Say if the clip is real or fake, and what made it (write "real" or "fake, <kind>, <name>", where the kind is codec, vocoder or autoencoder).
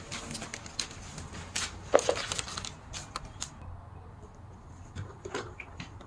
real